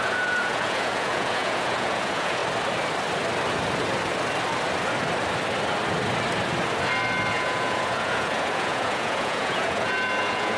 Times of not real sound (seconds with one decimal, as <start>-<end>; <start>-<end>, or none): 0.0-2.4; 7.3-10.6